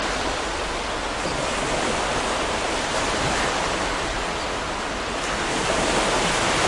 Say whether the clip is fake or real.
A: real